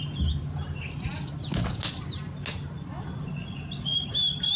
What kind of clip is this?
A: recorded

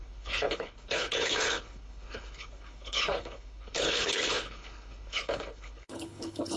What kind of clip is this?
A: remade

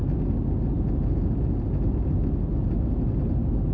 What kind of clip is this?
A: recorded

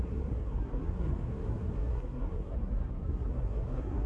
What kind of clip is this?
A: remade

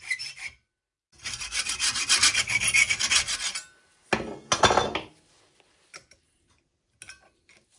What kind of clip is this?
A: recorded